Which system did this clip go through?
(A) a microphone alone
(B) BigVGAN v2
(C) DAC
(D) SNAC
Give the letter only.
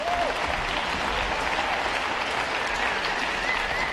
A